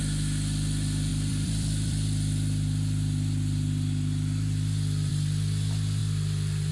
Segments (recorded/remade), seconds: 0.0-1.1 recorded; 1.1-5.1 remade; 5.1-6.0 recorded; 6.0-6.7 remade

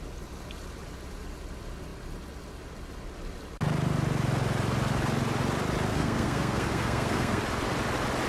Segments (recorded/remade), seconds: 0.0-5.9 recorded; 5.9-7.4 remade; 7.4-8.3 recorded

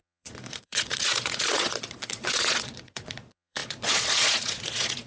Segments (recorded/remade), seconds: 0.0-5.1 remade

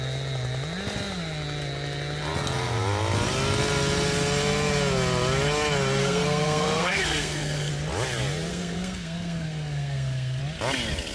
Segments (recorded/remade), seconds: 0.0-6.0 recorded; 6.0-7.7 remade; 7.7-8.5 recorded; 8.5-10.4 remade; 10.4-11.1 recorded

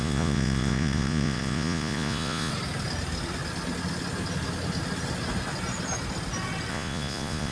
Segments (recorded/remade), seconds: 0.0-2.5 remade; 2.5-6.7 recorded; 6.7-7.5 remade

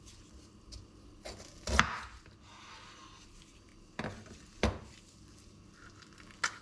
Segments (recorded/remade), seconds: 0.0-3.7 recorded; 3.7-5.5 remade; 5.5-6.6 recorded

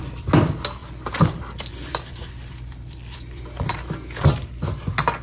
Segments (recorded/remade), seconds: 0.0-0.8 recorded; 0.8-3.9 remade; 3.9-5.2 recorded

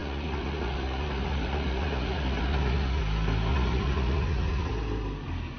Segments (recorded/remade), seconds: 0.0-3.0 remade; 3.0-3.5 recorded; 3.5-4.7 remade; 4.7-5.6 recorded